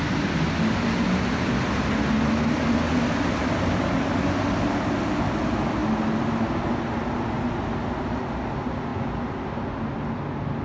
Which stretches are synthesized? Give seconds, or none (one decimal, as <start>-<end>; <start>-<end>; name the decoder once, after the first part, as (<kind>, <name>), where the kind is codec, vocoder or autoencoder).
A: none